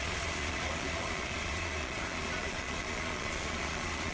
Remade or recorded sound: remade